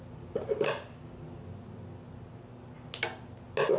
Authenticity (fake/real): real